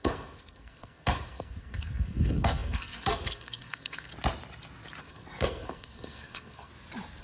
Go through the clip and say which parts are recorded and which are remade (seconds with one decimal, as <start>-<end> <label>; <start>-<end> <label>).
0.0-4.1 remade; 4.1-5.0 recorded; 5.0-6.7 remade; 6.7-7.2 recorded